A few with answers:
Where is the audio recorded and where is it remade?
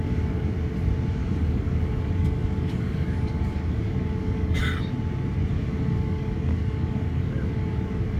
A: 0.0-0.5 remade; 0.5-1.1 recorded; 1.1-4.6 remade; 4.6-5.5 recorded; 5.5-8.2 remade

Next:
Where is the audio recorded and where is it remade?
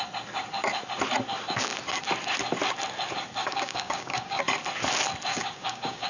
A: 0.0-3.4 recorded; 3.4-4.4 remade; 4.4-5.3 recorded; 5.3-6.1 remade